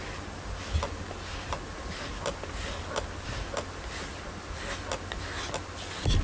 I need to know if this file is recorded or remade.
recorded